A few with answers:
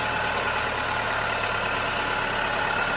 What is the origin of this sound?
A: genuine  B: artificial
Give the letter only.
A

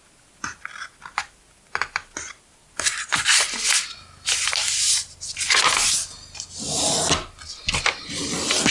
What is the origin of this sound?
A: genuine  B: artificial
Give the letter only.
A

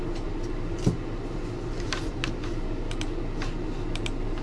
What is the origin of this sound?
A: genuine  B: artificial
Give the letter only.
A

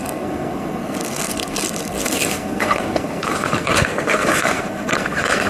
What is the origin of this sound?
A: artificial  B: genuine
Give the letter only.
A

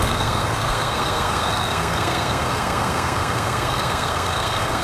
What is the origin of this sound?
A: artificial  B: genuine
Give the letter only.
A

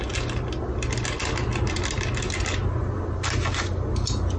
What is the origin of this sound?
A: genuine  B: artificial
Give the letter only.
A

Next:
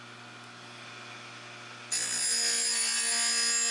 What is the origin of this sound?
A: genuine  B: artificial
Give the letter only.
A